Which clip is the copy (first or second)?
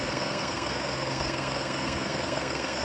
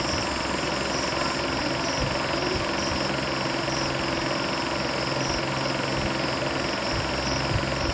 first